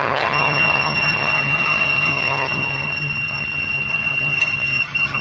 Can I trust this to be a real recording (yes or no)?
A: no